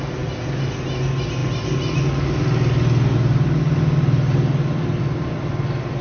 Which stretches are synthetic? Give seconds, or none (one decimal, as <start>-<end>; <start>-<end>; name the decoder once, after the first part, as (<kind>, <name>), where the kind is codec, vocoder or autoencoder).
none